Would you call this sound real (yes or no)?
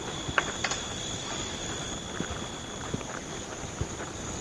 yes